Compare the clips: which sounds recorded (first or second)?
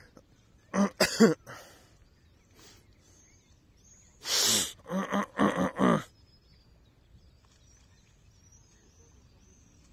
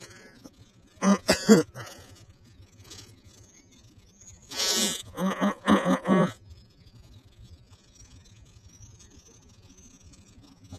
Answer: first